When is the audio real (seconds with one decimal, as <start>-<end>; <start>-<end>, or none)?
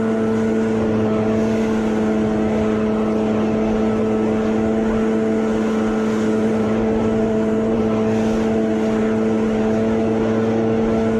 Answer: 0.0-6.4; 7.8-11.2